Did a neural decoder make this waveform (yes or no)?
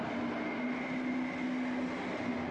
no